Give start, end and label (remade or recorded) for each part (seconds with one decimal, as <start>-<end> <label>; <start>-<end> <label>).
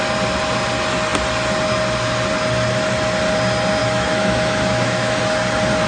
0.0-3.8 recorded; 3.8-5.2 remade; 5.2-5.9 recorded